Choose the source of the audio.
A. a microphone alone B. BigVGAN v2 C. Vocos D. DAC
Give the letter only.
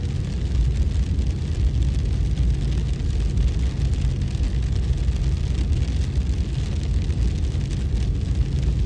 A